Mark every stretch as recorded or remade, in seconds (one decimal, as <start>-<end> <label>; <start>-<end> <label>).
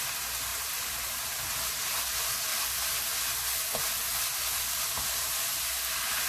0.0-0.5 recorded; 0.5-1.4 remade; 1.4-6.3 recorded